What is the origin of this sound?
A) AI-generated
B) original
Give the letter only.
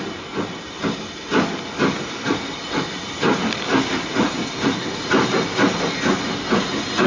B